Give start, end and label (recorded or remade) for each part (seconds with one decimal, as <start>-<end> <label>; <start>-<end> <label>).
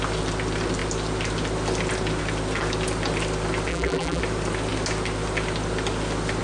0.0-3.7 recorded; 3.7-4.2 remade; 4.2-6.4 recorded